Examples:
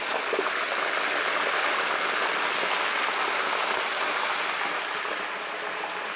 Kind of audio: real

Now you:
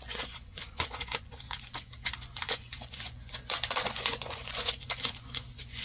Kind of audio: fake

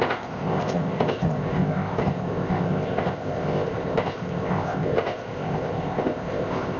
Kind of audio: fake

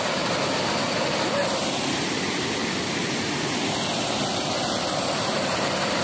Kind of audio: real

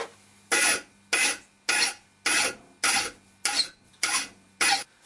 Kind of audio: real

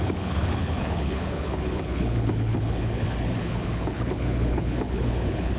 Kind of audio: fake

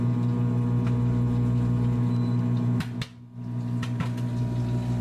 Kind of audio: real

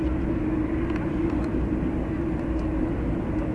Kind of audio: real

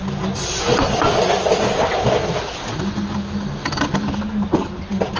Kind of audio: real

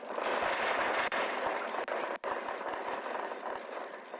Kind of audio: real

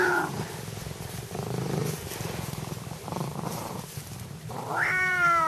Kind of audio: fake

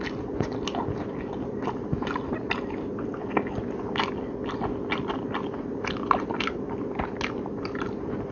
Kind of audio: real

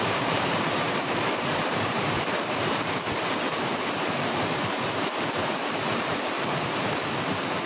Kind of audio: fake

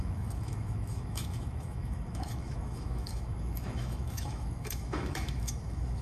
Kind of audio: fake